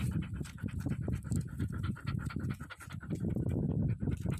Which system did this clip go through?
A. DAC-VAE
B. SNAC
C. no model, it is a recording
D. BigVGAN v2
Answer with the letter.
D